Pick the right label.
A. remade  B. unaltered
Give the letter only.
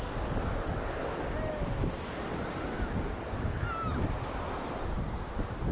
B